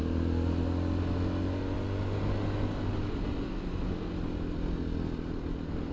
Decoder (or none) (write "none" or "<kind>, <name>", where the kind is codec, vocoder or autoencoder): none